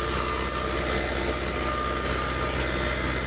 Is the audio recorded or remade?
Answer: recorded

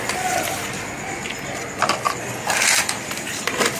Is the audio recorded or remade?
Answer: recorded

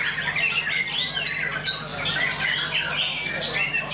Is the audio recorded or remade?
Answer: recorded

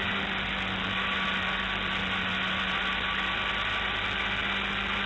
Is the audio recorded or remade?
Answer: recorded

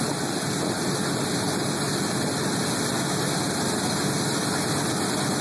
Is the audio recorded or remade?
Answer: recorded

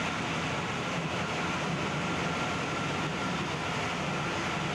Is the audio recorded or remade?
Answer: recorded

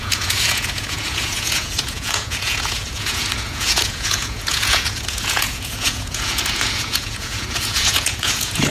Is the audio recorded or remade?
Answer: remade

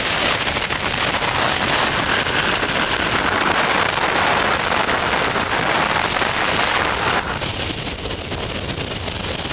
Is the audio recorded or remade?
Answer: recorded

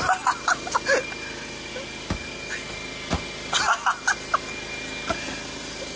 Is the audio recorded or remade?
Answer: recorded